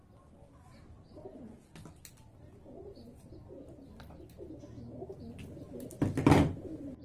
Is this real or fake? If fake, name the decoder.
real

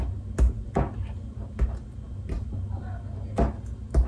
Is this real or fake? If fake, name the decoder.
real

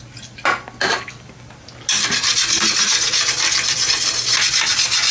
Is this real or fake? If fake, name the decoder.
real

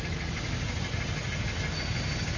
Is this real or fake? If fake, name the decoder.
real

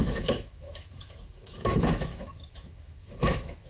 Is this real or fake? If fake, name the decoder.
fake, autoencoder, DAC-VAE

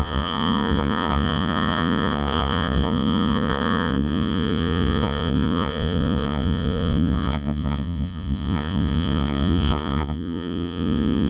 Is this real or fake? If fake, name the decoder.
fake, vocoder, Vocos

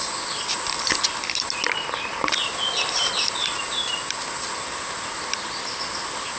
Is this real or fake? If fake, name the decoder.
real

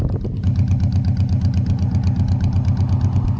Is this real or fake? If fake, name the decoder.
real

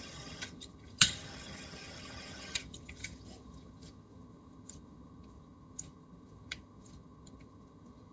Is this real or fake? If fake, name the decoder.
fake, vocoder, HiFi-GAN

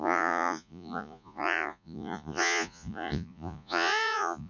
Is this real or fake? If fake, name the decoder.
fake, vocoder, Vocos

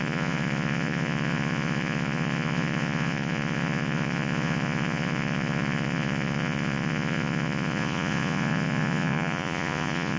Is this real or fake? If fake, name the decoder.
fake, vocoder, Vocos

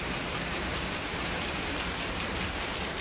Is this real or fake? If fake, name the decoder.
fake, vocoder, BigVGAN v2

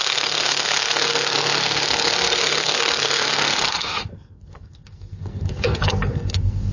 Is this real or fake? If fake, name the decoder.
fake, codec, SNAC